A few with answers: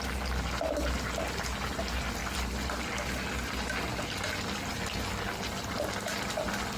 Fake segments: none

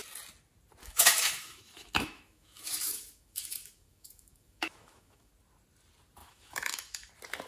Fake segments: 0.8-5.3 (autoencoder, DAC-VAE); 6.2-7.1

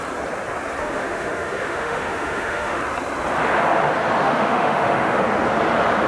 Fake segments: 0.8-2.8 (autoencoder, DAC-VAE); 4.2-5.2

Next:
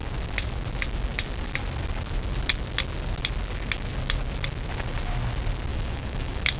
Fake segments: 5.7-6.6 (autoencoder, DAC-VAE)

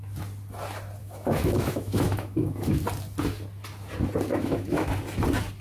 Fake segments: 1.0-2.8 (autoencoder, DAC-VAE); 4.3-4.9

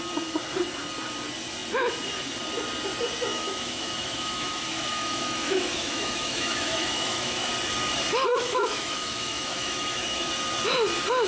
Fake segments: 3.3-7.5 (autoencoder, DAC-VAE); 8.3-10.3

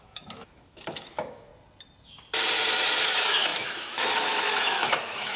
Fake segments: 0.0-1.5 (autoencoder, DAC-VAE); 3.0-5.4